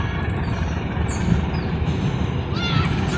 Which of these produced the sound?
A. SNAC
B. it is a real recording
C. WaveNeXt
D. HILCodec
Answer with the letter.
B